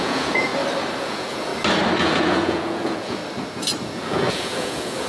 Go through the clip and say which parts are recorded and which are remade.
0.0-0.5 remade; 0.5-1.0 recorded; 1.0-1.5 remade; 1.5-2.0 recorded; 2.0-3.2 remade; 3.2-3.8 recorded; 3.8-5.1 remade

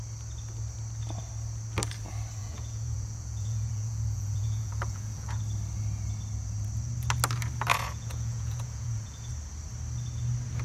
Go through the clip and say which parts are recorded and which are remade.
0.0-2.4 recorded; 2.4-5.4 remade; 5.4-7.7 recorded; 7.7-9.3 remade; 9.3-10.6 recorded

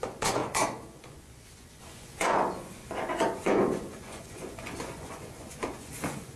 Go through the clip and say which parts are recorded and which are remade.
0.0-6.4 remade

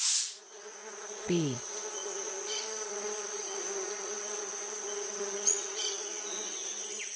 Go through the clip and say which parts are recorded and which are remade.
0.0-7.2 remade

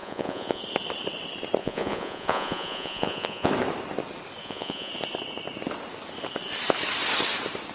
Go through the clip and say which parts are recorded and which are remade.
0.0-0.6 remade; 0.6-1.6 recorded; 1.6-3.5 remade; 3.5-4.4 recorded; 4.4-4.9 remade; 4.9-7.7 recorded

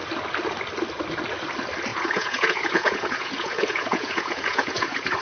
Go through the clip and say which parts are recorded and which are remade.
0.0-1.9 recorded; 1.9-5.2 remade

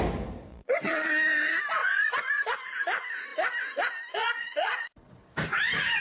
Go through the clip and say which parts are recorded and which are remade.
0.0-0.5 recorded; 0.5-1.1 remade; 1.1-1.8 recorded; 1.8-2.4 remade; 2.4-4.2 recorded; 4.2-5.1 remade; 5.1-6.0 recorded